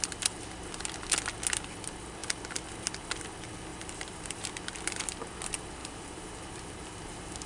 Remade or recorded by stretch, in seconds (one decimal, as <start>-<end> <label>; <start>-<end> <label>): 0.0-3.7 recorded; 3.7-4.5 remade; 4.5-5.8 recorded; 5.8-7.5 remade